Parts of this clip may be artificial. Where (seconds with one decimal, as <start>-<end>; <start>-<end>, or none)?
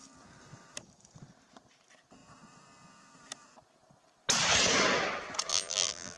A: 5.5-6.2